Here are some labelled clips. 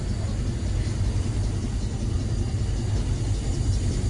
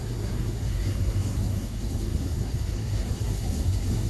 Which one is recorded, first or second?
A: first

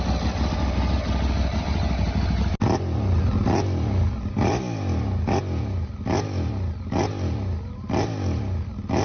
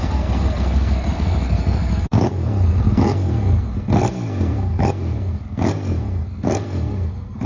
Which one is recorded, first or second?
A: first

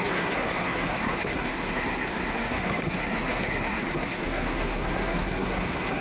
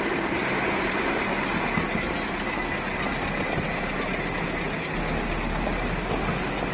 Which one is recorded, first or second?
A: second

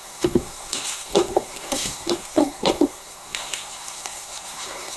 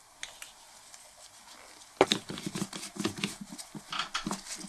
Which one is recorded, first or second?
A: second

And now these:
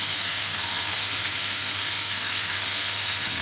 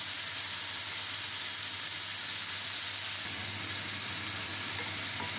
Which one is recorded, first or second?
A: second